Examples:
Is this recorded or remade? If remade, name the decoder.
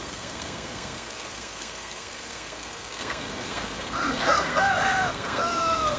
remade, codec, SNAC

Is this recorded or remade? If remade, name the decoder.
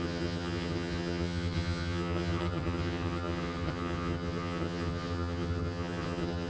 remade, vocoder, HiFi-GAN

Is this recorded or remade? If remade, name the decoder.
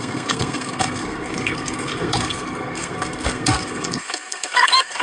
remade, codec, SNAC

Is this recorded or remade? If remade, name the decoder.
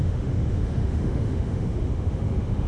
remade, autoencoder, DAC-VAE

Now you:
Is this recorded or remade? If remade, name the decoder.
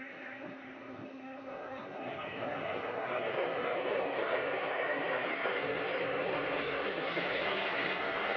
remade, codec, SNAC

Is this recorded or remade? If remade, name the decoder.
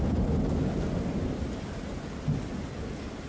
recorded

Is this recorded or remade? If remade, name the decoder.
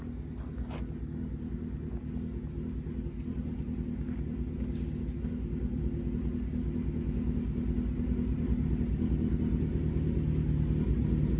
recorded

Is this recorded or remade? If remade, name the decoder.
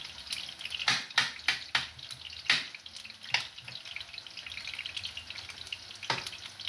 recorded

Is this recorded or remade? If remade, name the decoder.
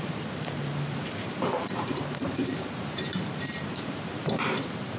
remade, vocoder, BigVGAN v2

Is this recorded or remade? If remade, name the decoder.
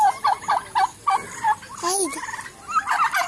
recorded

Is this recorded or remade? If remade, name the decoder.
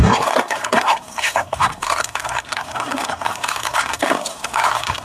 remade, codec, SNAC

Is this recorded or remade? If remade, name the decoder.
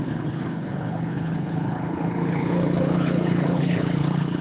remade, codec, HILCodec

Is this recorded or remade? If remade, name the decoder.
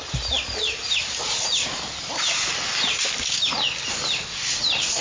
recorded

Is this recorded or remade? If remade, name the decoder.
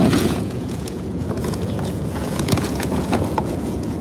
remade, vocoder, Vocos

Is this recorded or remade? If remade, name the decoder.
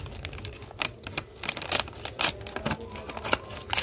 recorded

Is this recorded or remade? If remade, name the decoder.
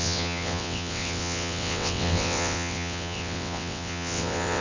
remade, vocoder, WaveNeXt